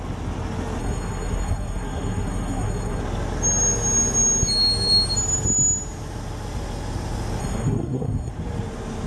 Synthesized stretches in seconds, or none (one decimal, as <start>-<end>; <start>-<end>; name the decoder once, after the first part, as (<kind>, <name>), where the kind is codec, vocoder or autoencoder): 0.8-3.0 (codec, SNAC); 7.4-8.3